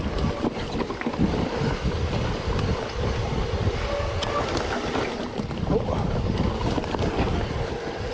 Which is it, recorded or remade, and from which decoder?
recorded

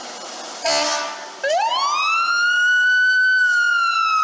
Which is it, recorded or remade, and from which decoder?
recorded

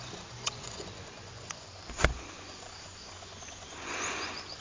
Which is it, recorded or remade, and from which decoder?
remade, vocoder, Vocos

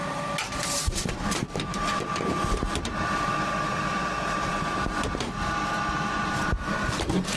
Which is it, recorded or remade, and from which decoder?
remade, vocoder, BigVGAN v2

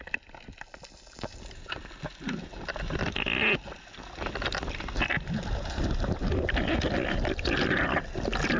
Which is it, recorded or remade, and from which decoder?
recorded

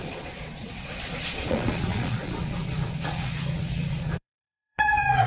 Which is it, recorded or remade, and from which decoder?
remade, vocoder, Vocos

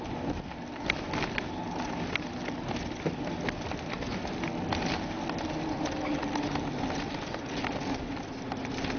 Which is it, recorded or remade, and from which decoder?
recorded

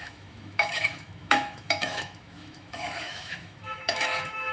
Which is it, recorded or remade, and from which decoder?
remade, autoencoder, DAC-VAE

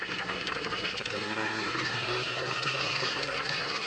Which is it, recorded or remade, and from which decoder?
remade, codec, SNAC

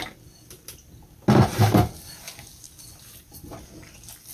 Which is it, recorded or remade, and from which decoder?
recorded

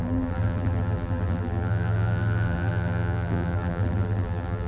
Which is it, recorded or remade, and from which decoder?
remade, vocoder, BigVGAN v2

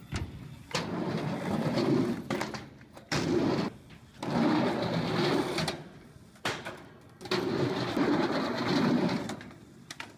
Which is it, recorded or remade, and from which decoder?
recorded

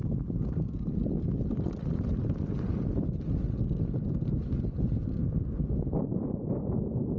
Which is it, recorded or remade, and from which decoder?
recorded